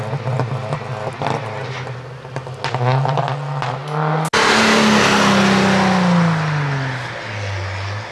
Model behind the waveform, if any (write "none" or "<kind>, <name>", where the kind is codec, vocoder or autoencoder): none